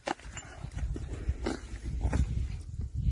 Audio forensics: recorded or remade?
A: recorded